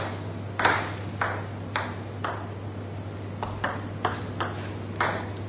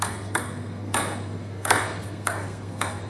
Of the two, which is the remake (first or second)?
second